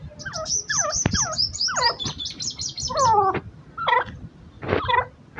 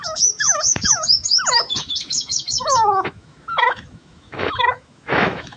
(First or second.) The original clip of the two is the first